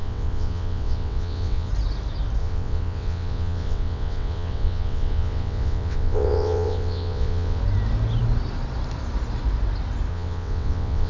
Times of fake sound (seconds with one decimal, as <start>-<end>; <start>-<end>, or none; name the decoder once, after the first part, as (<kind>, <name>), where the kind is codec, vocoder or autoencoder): 0.0-1.7 (vocoder, WaveNeXt); 2.4-7.6; 10.1-11.1